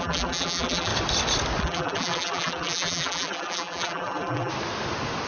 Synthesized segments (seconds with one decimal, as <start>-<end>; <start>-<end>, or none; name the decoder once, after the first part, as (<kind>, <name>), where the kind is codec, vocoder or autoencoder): 0.0-0.9 (vocoder, BigVGAN v2); 1.6-4.5